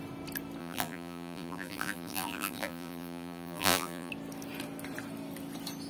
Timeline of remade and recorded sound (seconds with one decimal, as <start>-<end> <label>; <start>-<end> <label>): 0.0-0.6 recorded; 0.6-4.1 remade; 4.1-5.9 recorded